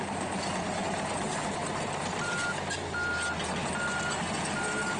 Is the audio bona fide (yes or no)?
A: yes